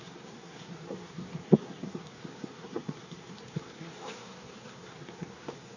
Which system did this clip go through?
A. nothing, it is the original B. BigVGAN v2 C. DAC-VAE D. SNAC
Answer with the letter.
D